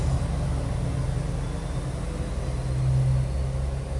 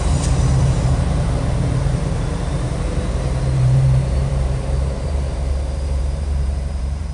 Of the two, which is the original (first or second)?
first